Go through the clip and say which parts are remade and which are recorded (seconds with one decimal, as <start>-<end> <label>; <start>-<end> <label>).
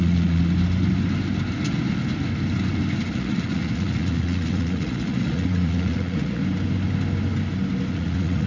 0.0-0.4 remade; 0.4-3.1 recorded; 3.1-6.4 remade; 6.4-7.9 recorded; 7.9-8.5 remade